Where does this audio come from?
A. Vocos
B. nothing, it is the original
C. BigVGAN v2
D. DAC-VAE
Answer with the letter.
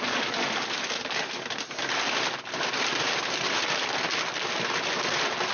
B